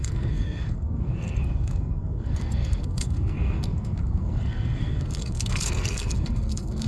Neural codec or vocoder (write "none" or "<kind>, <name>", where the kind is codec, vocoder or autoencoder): codec, SNAC